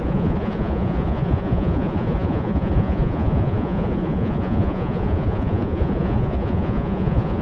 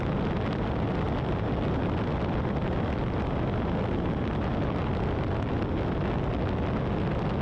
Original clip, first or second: second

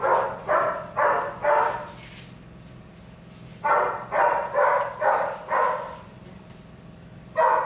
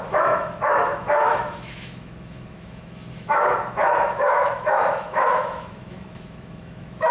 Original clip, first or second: first